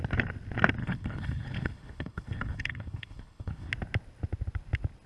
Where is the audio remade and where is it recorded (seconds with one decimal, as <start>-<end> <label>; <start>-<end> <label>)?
0.0-0.8 recorded; 0.8-3.7 remade; 3.7-5.1 recorded